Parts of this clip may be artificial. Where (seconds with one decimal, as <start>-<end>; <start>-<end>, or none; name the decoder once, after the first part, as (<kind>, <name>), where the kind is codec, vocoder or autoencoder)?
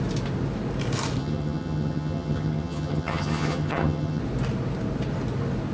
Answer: 1.2-4.2 (vocoder, HiFi-GAN)